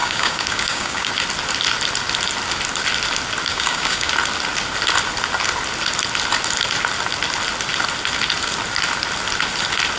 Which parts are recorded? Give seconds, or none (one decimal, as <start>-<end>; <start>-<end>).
1.1-3.5; 4.1-10.0